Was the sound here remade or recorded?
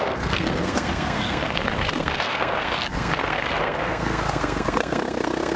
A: remade